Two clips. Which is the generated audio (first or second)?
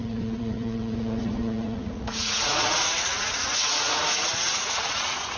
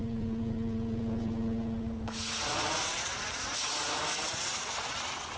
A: first